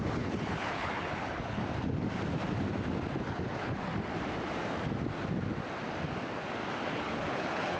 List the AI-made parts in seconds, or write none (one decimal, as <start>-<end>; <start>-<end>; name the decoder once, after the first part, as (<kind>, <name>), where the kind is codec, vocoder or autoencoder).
0.0-1.6 (codec, HILCodec); 3.2-3.9; 6.9-7.8